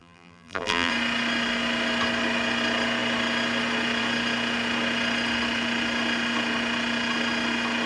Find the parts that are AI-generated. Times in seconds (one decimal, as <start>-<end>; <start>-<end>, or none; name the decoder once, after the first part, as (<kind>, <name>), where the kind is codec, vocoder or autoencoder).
0.0-0.9 (vocoder, BigVGAN v2)